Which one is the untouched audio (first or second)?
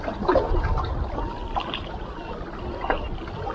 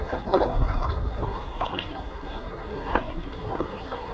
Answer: first